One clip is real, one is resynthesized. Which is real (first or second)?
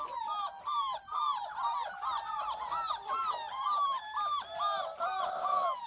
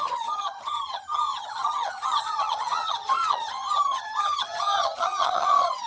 first